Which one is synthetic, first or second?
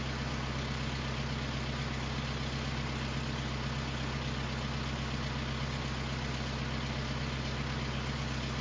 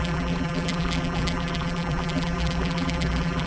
second